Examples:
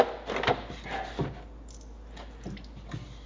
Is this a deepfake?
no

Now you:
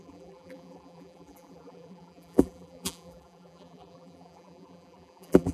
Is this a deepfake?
yes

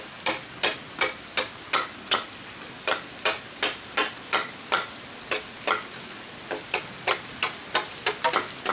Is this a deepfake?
no